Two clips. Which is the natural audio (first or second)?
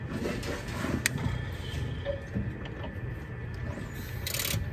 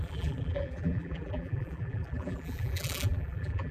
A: first